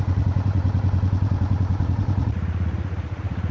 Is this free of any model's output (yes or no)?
no